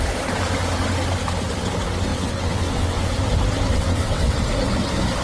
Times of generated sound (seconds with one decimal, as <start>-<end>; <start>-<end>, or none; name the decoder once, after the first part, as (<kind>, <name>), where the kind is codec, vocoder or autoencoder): 2.1-3.1 (vocoder, WaveNeXt); 3.7-4.4